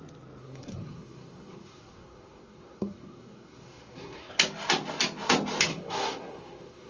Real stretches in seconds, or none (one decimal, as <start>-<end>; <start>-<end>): 0.0-0.4; 4.3-5.7